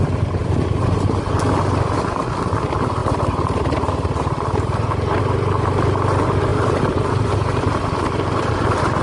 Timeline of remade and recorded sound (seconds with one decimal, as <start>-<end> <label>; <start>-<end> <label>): 0.0-3.0 recorded; 3.0-5.2 remade; 5.2-6.5 recorded; 6.5-8.5 remade; 8.5-9.0 recorded